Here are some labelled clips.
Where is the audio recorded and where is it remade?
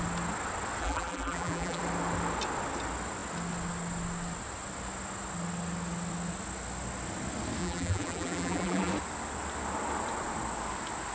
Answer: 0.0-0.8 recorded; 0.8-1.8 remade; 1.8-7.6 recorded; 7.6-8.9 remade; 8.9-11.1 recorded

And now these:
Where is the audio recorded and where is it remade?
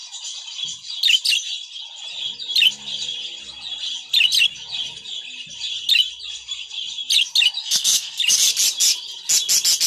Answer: 0.0-7.6 recorded; 7.6-8.2 remade; 8.2-9.9 recorded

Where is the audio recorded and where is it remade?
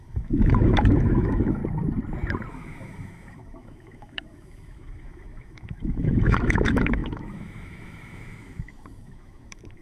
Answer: 0.0-1.6 remade; 1.6-2.5 recorded; 2.5-9.8 remade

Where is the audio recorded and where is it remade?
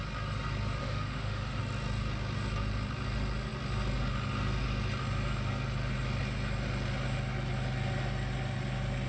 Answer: 0.0-0.8 recorded; 0.8-1.6 remade; 1.6-9.1 recorded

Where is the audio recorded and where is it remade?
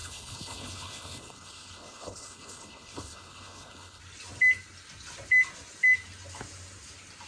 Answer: 0.0-4.0 remade; 4.0-7.3 recorded